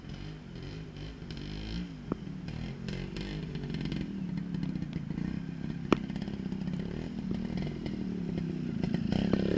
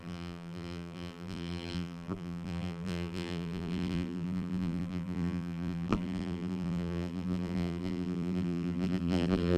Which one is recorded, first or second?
first